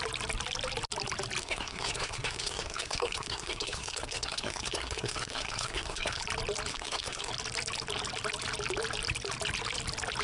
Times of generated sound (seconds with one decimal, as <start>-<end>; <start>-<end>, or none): 1.4-6.2; 6.7-7.3